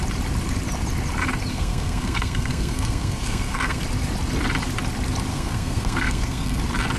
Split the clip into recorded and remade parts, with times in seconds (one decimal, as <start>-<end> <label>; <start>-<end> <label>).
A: 0.0-1.5 recorded; 1.5-3.8 remade; 3.8-5.3 recorded; 5.3-6.6 remade; 6.6-7.0 recorded